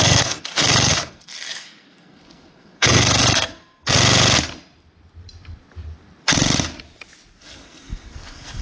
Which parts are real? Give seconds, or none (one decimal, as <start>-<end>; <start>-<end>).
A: 3.9-7.4

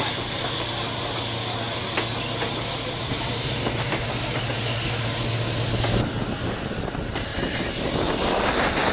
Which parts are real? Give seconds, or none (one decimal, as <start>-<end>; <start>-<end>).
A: 0.0-8.9

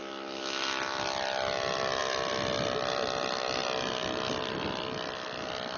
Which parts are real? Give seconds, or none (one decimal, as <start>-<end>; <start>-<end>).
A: 0.0-5.8

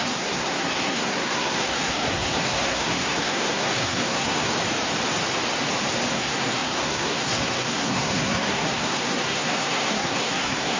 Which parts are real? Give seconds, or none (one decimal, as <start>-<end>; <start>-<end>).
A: 4.5-6.1